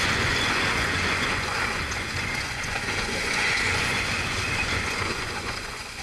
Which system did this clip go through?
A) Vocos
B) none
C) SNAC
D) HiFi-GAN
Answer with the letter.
A